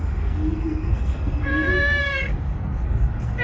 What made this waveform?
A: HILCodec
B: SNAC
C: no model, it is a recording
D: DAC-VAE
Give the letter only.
B